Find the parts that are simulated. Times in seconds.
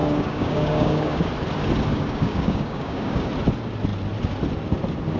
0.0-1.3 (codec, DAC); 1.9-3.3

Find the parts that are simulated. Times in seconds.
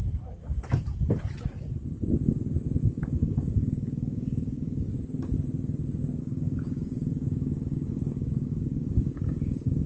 2.8-4.9 (codec, DAC); 6.2-9.9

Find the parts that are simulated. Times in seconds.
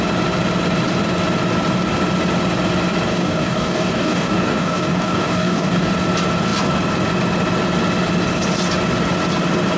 3.1-5.9 (codec, DAC)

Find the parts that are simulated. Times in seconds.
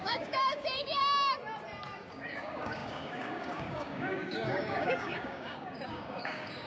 0.0-1.0 (codec, DAC); 2.1-6.7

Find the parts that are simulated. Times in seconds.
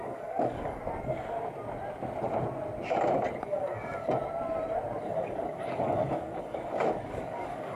0.0-0.8 (codec, DAC); 3.4-4.2; 5.0-7.8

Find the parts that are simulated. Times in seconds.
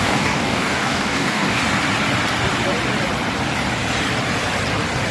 0.0-1.6 (codec, DAC)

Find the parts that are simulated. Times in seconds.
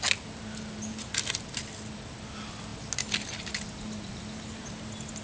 none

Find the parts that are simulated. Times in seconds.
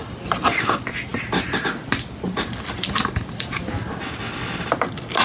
none